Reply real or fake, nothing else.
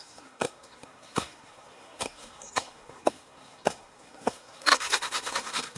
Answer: fake